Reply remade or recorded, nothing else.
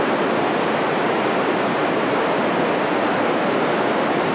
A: recorded